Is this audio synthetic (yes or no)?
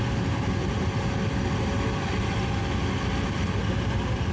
no